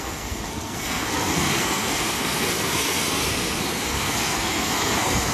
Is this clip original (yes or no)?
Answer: no